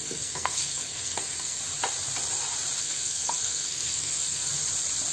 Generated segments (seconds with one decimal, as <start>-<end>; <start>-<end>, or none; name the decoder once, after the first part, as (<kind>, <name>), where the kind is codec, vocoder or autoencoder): 0.0-1.6 (codec, SNAC); 2.8-4.5